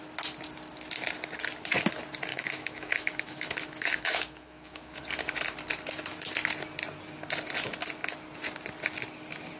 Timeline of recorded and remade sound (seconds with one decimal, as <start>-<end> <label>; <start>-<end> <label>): 0.0-2.3 recorded; 2.3-5.0 remade; 5.0-9.6 recorded